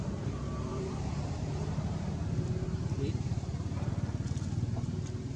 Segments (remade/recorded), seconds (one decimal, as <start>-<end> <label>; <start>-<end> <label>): 0.0-0.7 recorded; 0.7-3.9 remade; 3.9-5.4 recorded